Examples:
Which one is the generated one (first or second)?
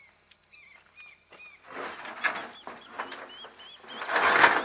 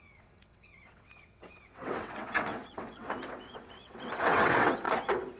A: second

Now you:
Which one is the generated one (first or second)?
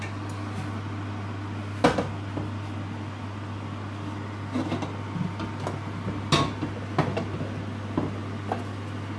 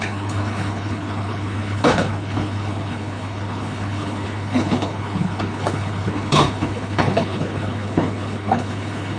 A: second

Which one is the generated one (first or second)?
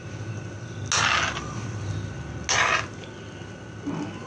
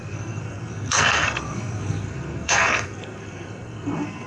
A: second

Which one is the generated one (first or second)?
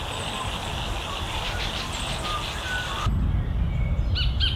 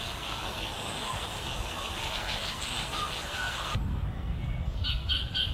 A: second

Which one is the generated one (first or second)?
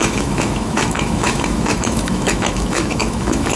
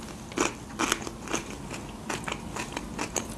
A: first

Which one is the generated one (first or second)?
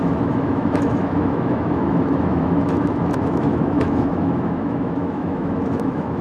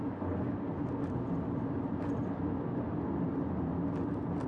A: first